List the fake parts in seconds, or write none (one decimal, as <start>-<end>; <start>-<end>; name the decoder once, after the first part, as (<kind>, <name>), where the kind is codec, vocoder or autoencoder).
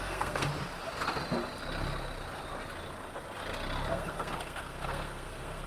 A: 0.0-0.5 (codec, SNAC); 3.9-5.7